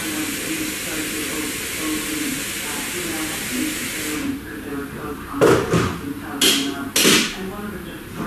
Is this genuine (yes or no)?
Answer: yes